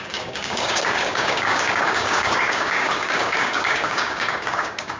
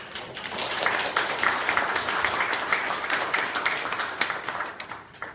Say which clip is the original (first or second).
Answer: second